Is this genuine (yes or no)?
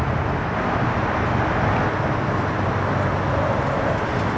yes